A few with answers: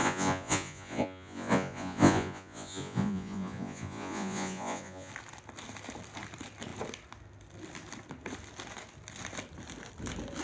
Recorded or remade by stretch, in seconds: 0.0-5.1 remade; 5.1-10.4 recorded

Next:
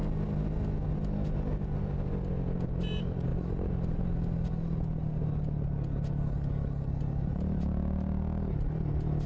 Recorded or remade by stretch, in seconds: 0.0-9.3 recorded

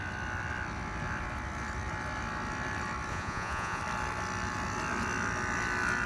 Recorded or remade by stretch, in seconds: 0.0-3.1 recorded; 3.1-3.8 remade; 3.8-6.1 recorded

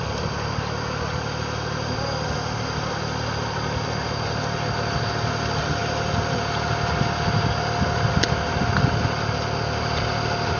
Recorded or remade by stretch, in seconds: 0.0-10.6 recorded

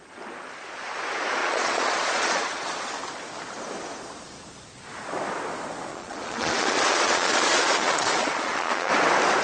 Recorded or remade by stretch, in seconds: 0.0-1.4 recorded; 1.4-2.9 remade; 2.9-5.9 recorded; 5.9-8.9 remade; 8.9-9.4 recorded

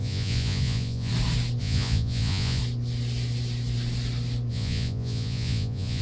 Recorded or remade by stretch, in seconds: 0.0-1.1 remade; 1.1-1.6 recorded; 1.6-2.6 remade; 2.6-4.5 recorded; 4.5-6.0 remade

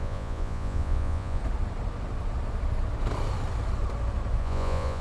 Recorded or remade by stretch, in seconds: 0.0-1.4 remade; 1.4-4.4 recorded; 4.4-5.0 remade

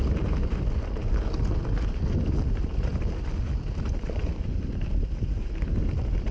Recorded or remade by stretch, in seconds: 0.0-6.3 recorded